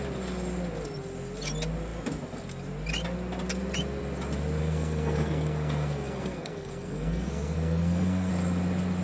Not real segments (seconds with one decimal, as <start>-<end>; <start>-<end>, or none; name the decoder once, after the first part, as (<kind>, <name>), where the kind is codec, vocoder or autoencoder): 4.6-8.3 (codec, SNAC)